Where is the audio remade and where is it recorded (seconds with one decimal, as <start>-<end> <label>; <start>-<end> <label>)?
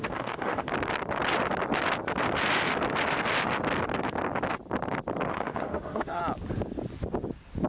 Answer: 0.0-0.7 remade; 0.7-5.3 recorded; 5.3-6.2 remade; 6.2-7.7 recorded